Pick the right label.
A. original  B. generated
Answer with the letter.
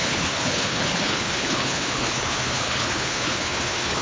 B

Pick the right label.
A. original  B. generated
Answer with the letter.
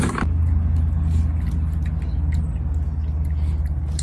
A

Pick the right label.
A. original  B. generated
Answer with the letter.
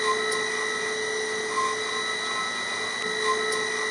A